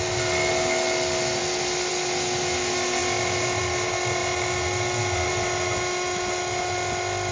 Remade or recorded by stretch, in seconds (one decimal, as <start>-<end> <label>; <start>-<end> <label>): 0.0-7.3 recorded